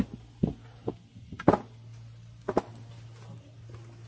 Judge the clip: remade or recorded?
recorded